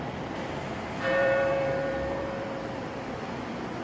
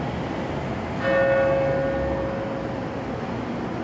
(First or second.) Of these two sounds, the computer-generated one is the first